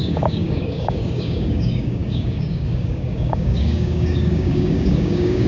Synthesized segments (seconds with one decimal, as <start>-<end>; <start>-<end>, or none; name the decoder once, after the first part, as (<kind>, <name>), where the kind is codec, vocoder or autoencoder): 0.0-5.5 (codec, DAC)